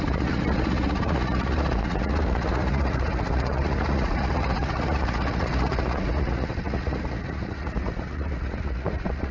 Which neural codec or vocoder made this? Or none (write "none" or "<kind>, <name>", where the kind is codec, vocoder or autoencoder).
vocoder, Vocos